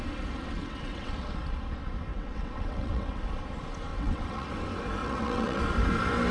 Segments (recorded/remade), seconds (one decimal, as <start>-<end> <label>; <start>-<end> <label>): 0.0-0.5 recorded; 0.5-1.1 remade; 1.1-2.1 recorded; 2.1-3.2 remade; 3.2-3.9 recorded; 3.9-4.5 remade; 4.5-5.0 recorded; 5.0-5.6 remade; 5.6-6.3 recorded